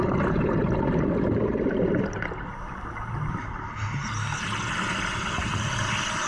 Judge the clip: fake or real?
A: real